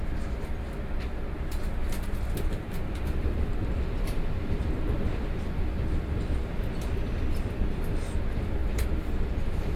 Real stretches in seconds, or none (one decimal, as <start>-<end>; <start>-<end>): 0.0-9.8